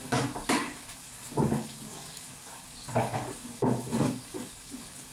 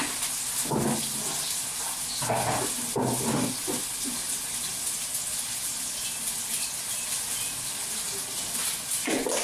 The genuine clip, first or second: second